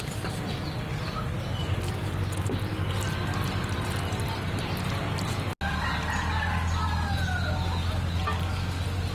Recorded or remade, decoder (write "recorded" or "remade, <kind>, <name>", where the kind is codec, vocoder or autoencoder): recorded